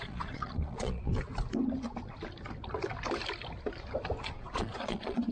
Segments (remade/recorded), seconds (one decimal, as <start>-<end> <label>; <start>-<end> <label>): 0.0-1.1 remade; 1.1-4.3 recorded; 4.3-5.3 remade